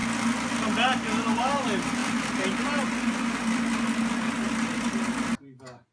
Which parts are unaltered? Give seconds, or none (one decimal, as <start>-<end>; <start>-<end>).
0.0-5.9